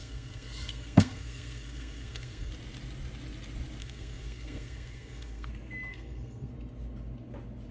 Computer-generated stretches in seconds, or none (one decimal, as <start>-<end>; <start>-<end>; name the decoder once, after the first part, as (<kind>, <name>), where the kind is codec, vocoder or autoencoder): 0.0-2.5 (codec, SNAC); 3.8-5.5; 5.9-6.5